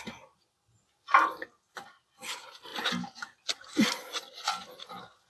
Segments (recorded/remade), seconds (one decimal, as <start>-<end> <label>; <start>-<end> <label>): 0.0-5.3 recorded